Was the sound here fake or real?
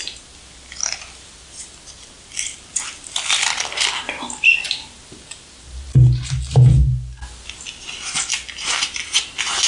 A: real